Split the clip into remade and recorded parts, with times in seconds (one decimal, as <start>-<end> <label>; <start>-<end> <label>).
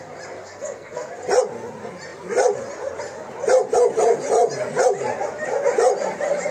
0.0-0.4 recorded; 0.4-1.1 remade; 1.1-6.5 recorded